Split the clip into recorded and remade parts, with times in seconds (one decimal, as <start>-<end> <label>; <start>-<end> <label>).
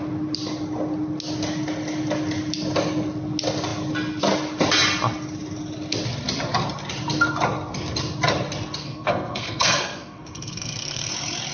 0.0-8.8 recorded; 8.8-11.1 remade; 11.1-11.5 recorded